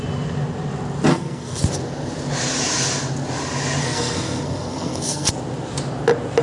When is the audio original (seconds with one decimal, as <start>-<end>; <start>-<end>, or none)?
0.0-1.1; 1.6-3.8; 5.3-6.4

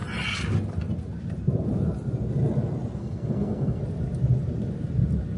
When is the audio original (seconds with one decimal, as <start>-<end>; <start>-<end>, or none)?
0.0-3.0; 3.8-5.4

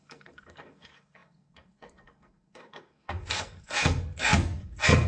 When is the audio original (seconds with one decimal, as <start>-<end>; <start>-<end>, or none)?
none

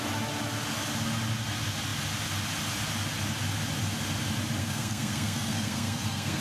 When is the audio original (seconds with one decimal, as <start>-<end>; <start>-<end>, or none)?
0.0-4.6

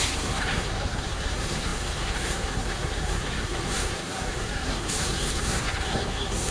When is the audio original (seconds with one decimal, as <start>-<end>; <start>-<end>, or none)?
none

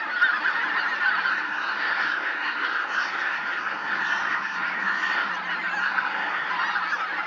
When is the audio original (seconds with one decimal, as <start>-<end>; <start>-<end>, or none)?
0.0-1.3; 5.3-5.8; 6.5-7.3